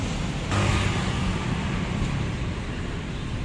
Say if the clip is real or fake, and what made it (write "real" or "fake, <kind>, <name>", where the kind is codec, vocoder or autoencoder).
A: real